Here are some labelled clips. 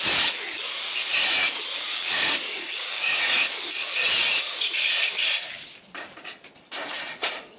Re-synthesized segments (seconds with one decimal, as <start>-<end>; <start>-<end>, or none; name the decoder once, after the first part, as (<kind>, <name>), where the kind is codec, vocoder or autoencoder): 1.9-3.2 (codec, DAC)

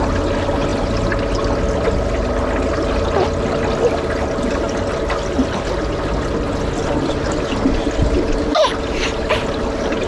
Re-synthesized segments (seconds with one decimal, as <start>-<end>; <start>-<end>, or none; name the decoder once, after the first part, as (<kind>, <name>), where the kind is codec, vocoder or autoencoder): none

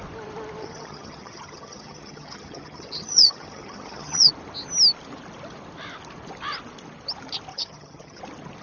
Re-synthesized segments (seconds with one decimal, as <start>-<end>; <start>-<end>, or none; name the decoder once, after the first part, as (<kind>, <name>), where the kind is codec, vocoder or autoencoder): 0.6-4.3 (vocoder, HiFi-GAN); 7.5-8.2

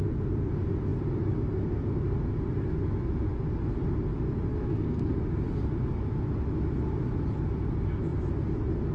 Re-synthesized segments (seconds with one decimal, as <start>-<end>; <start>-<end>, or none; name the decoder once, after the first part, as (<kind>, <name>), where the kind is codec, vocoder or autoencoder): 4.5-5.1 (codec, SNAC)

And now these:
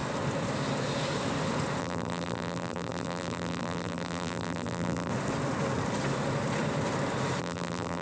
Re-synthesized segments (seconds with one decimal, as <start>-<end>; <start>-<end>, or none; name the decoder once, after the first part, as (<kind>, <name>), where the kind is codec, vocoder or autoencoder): 1.8-5.1 (vocoder, BigVGAN v2); 7.4-8.0

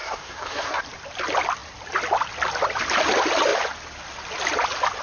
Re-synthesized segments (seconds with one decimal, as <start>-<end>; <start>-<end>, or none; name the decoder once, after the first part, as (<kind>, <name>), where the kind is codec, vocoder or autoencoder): 0.0-0.8 (codec, SNAC)